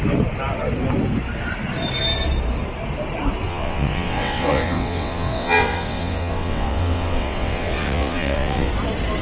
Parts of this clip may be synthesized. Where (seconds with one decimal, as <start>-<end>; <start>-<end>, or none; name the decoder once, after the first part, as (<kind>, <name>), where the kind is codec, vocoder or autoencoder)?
3.5-8.7 (vocoder, WaveNeXt)